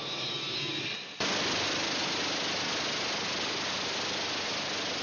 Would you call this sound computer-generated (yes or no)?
no